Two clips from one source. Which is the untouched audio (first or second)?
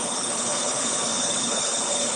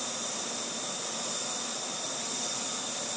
second